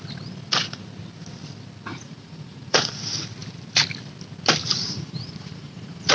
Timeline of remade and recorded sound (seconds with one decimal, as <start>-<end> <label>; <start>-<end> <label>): 0.0-1.9 recorded; 1.9-2.9 remade; 2.9-4.7 recorded; 4.7-6.1 remade